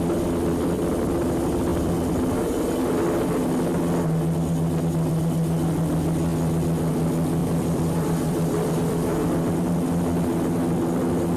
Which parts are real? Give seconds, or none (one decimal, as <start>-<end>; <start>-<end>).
0.0-7.4; 9.2-11.4